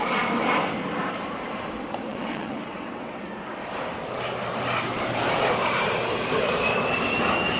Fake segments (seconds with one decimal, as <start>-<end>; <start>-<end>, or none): 2.1-3.2